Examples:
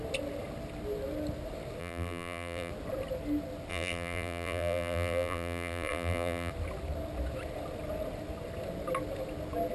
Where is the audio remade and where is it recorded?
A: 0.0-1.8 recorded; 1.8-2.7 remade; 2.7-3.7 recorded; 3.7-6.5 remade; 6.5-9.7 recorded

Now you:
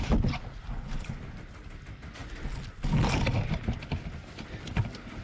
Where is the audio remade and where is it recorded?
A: 0.0-5.2 recorded

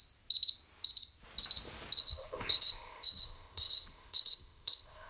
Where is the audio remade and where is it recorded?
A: 0.0-2.0 recorded; 2.0-5.1 remade

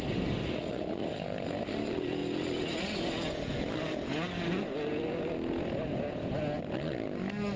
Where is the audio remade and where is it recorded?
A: 0.0-0.4 recorded; 0.4-1.2 remade; 1.2-7.6 recorded

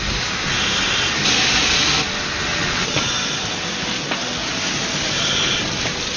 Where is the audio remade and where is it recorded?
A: 0.0-2.5 recorded; 2.5-3.1 remade; 3.1-6.2 recorded

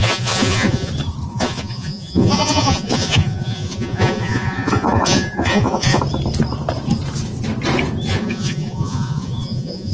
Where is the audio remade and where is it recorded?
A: 0.0-0.9 remade; 0.9-1.3 recorded; 1.3-6.0 remade; 6.0-8.1 recorded; 8.1-9.9 remade